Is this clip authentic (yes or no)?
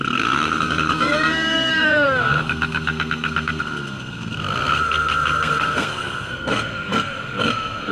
no